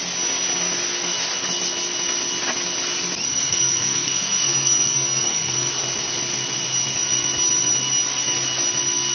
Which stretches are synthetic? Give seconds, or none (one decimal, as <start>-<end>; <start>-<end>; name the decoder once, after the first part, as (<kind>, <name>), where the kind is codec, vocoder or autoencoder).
3.3-5.7 (codec, SNAC)